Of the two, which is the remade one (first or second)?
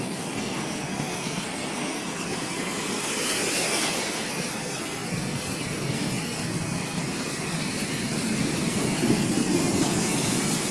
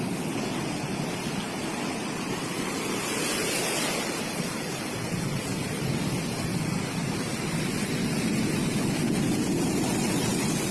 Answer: first